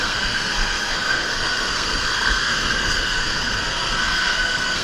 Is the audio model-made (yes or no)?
yes